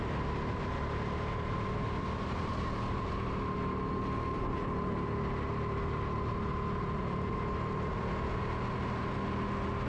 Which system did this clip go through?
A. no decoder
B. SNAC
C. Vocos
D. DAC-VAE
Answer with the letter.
A